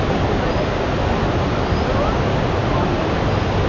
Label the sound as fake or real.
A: real